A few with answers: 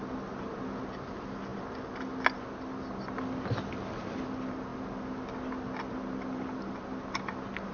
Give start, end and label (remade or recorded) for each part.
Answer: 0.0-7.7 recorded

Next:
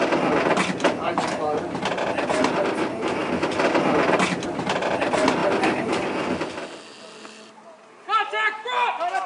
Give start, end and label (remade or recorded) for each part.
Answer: 0.0-3.2 recorded; 3.2-5.0 remade; 5.0-9.3 recorded

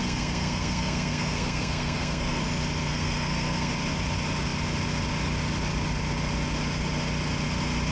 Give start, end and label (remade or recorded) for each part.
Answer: 0.0-2.4 remade; 2.4-2.8 recorded; 2.8-3.7 remade; 3.7-7.9 recorded

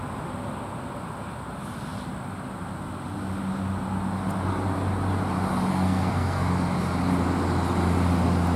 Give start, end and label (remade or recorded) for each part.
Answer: 0.0-5.7 recorded; 5.7-6.5 remade; 6.5-8.6 recorded

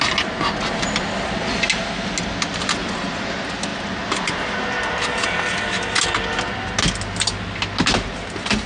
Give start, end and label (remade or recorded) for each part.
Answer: 0.0-8.7 recorded